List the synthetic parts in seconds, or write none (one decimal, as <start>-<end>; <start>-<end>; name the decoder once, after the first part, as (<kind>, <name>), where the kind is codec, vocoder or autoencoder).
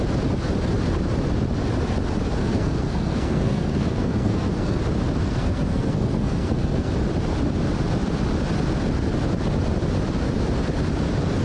2.4-4.8 (codec, SNAC); 5.2-6.9